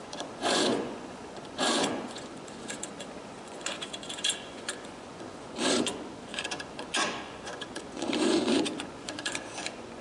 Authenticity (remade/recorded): remade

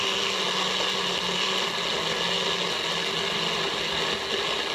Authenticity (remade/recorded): recorded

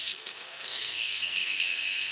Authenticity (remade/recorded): remade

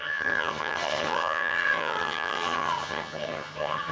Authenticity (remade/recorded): remade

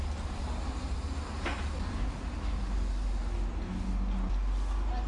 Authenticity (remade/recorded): recorded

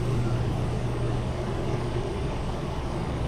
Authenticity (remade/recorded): remade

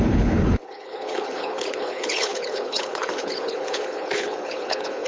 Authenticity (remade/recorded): remade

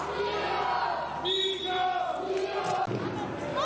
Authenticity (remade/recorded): recorded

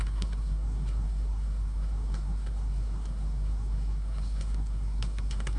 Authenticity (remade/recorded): remade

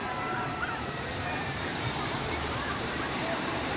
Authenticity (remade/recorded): remade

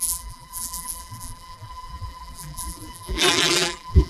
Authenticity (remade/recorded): remade